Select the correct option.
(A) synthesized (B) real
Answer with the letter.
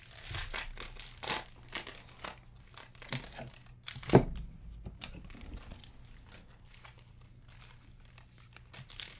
B